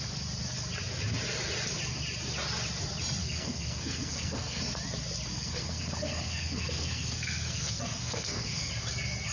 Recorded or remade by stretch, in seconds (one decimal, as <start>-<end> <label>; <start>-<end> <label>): 0.0-3.2 recorded; 3.2-4.6 remade; 4.6-5.3 recorded; 5.3-8.7 remade; 8.7-9.3 recorded